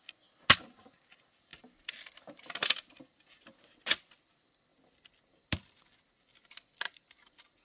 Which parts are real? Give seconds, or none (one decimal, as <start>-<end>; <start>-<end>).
0.0-7.6